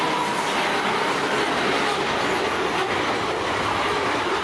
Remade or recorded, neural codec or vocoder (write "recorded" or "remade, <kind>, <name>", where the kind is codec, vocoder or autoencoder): recorded